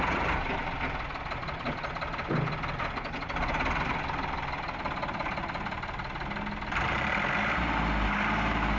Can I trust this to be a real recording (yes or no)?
yes